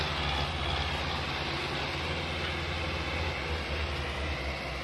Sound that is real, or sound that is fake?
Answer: real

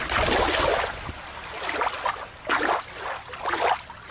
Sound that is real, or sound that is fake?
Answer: real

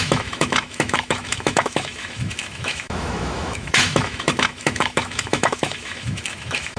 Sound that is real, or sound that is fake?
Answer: fake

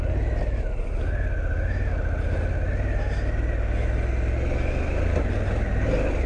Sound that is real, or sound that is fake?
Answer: real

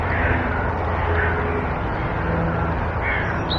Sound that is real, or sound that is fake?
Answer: real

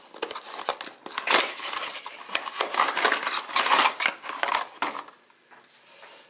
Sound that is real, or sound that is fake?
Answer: real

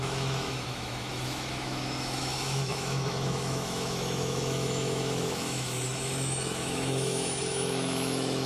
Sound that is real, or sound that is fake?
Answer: fake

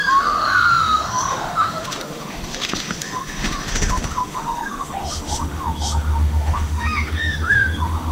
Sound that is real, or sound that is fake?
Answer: fake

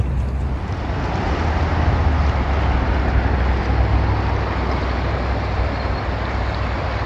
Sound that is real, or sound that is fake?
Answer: real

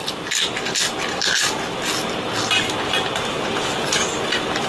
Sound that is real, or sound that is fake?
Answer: real